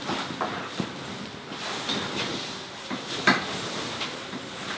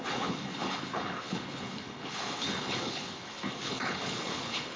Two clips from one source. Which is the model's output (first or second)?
second